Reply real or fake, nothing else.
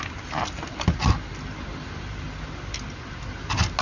real